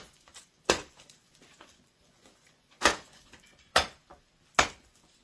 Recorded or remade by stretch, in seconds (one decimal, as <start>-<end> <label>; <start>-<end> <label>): 0.0-4.1 remade; 4.1-4.8 recorded; 4.8-5.2 remade